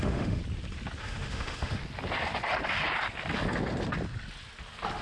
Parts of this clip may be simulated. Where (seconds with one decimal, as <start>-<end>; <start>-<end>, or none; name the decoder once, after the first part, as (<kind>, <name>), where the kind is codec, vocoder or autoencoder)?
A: 0.0-0.4 (autoencoder, DAC-VAE); 1.0-1.8